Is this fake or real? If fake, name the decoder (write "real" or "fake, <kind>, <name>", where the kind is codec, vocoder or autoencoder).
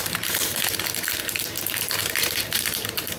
fake, vocoder, BigVGAN v2